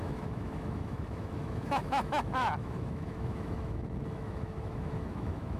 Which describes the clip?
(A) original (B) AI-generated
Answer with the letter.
B